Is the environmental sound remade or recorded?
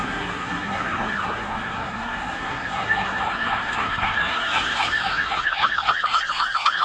remade